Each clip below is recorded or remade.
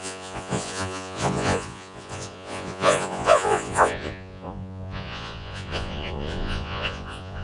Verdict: remade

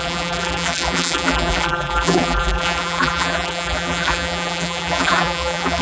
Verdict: remade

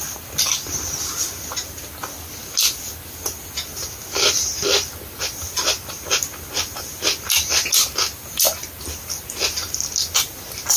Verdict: recorded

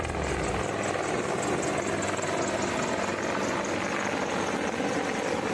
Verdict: recorded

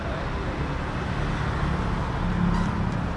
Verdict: recorded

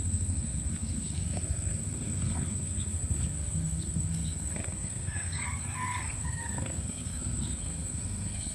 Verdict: remade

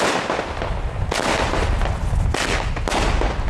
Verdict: recorded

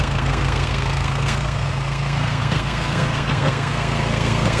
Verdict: remade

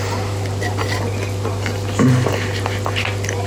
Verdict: recorded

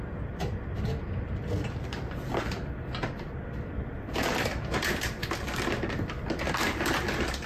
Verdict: remade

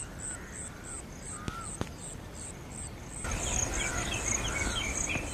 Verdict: recorded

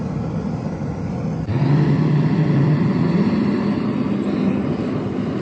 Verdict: recorded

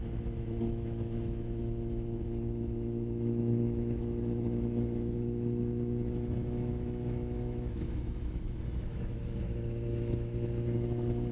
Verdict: remade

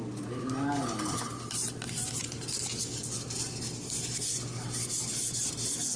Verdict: recorded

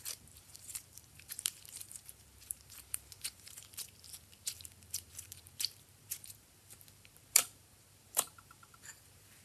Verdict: remade